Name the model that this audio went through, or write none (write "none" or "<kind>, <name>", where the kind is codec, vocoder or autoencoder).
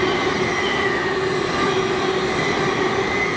none